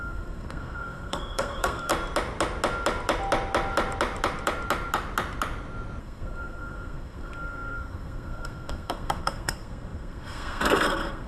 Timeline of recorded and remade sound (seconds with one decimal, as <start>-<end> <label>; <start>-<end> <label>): 0.0-1.9 remade; 1.9-6.0 recorded; 6.0-11.3 remade